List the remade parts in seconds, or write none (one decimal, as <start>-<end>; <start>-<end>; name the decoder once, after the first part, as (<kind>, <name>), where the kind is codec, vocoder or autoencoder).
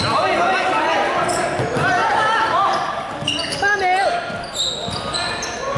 2.0-3.0 (vocoder, BigVGAN v2)